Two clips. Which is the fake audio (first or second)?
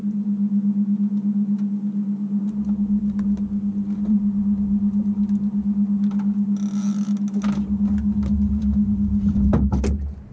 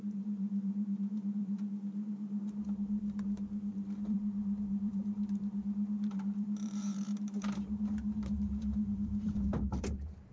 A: second